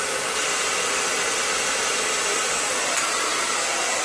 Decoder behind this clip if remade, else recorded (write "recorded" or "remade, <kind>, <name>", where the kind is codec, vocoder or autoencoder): recorded